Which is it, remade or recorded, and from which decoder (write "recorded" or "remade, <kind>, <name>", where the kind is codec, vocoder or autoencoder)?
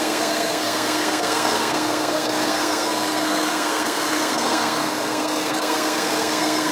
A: remade, codec, SNAC